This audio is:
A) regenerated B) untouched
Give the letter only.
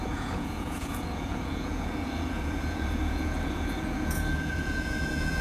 A